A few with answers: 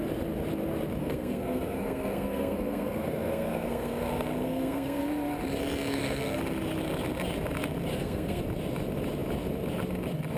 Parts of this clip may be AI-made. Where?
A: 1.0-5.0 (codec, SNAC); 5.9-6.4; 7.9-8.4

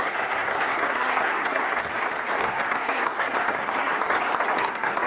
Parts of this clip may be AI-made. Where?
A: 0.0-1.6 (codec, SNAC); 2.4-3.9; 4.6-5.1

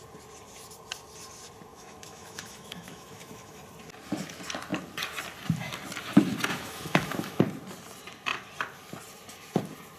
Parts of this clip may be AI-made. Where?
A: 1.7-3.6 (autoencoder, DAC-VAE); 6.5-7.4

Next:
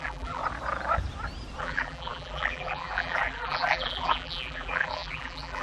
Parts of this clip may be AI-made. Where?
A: 0.0-0.4 (vocoder, BigVGAN v2); 1.6-5.6